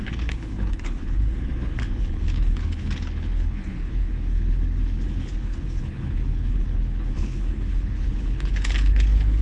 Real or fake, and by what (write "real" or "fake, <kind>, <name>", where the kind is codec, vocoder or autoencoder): fake, codec, HILCodec